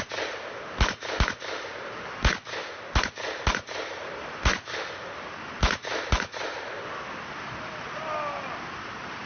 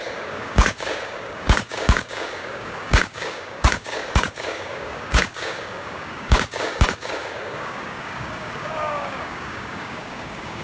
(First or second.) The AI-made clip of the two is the second